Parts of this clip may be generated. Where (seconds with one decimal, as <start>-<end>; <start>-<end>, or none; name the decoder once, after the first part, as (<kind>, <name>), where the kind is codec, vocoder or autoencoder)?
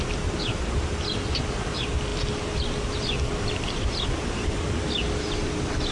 none